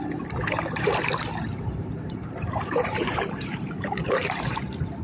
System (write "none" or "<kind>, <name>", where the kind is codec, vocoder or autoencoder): vocoder, BigVGAN v2